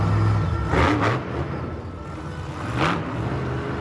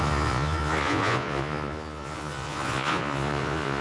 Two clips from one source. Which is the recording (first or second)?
first